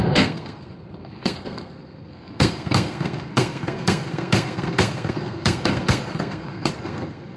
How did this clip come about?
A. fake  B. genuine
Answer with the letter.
A